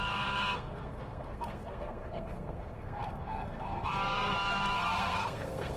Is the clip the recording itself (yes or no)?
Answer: no